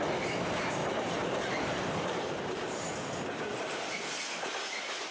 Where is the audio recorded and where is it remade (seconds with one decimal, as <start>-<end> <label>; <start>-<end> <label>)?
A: 0.0-0.8 recorded; 0.8-2.9 remade; 2.9-3.5 recorded; 3.5-5.1 remade